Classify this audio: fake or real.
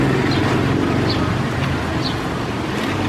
real